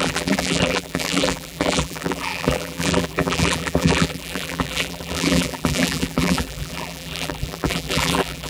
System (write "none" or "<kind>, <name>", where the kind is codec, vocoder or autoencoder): vocoder, BigVGAN v2